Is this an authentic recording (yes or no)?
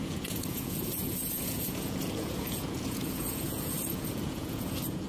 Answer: no